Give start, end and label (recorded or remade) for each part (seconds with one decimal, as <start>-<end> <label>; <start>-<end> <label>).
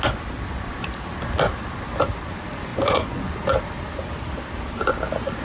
0.0-2.7 recorded; 2.7-3.3 remade; 3.3-5.4 recorded